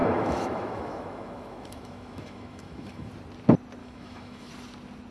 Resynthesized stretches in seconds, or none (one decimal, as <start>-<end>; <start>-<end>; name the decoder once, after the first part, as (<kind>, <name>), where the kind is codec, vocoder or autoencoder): 0.0-3.1 (autoencoder, DAC-VAE); 3.8-4.5